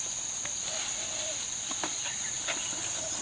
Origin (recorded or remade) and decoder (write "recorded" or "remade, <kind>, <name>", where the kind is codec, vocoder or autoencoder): recorded